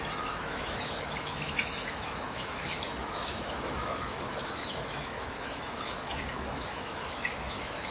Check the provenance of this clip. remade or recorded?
remade